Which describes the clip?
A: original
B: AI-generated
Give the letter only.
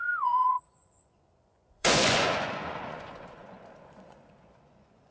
B